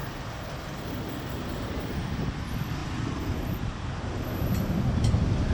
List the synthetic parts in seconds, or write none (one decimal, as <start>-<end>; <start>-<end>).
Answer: none